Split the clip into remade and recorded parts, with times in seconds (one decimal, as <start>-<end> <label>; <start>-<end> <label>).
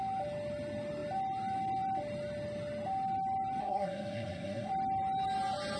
0.0-3.6 recorded; 3.6-4.7 remade; 4.7-5.8 recorded